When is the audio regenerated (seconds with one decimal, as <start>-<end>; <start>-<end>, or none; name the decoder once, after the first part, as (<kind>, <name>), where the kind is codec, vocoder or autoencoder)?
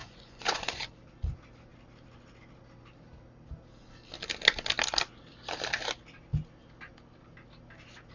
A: 0.0-0.8 (vocoder, Vocos)